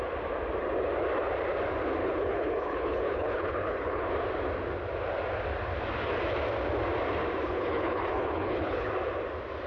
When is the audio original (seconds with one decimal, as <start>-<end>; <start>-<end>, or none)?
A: 0.0-2.0; 4.1-7.4; 8.9-9.7